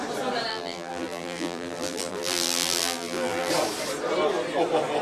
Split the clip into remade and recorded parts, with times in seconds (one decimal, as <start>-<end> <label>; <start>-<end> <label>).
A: 0.0-0.5 recorded; 0.5-3.5 remade; 3.5-5.0 recorded